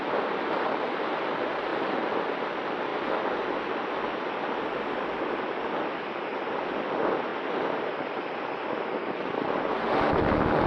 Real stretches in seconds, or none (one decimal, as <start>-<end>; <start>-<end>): 0.0-10.7